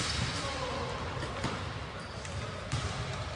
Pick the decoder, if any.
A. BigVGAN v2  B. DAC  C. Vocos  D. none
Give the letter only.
D